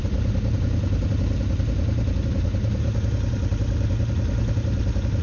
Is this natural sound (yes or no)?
yes